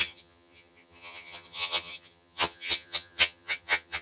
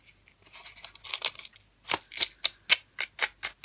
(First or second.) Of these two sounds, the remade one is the first